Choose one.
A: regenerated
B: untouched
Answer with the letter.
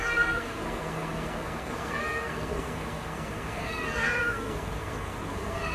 A